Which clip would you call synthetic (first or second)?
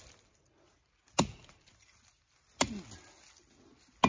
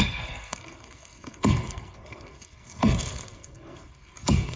second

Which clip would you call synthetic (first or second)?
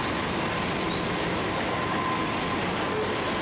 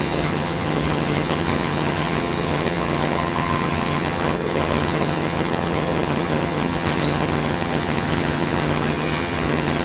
second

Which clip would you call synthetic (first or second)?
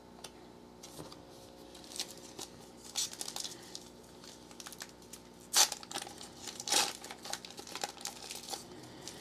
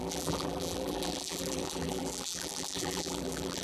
second